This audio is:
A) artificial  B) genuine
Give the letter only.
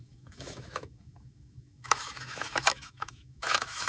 A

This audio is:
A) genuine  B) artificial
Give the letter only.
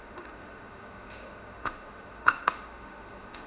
B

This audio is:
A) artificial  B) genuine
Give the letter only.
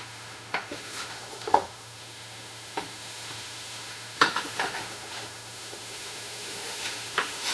A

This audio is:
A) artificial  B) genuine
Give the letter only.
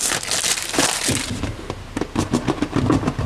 B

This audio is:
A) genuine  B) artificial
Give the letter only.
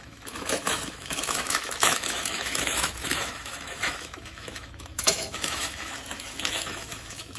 B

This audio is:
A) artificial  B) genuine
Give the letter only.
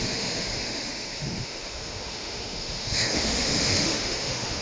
A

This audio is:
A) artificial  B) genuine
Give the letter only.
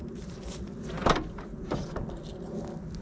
B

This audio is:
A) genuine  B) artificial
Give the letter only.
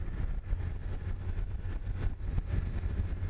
A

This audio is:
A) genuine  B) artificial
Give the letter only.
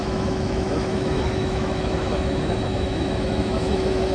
B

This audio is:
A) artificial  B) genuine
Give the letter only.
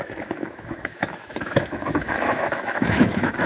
A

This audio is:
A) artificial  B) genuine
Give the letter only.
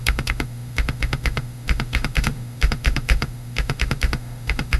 A